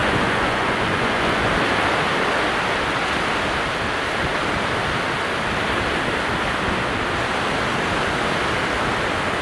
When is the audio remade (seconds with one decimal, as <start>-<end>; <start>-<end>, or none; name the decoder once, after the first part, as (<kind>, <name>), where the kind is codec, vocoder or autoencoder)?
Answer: 0.0-1.5 (vocoder, Vocos)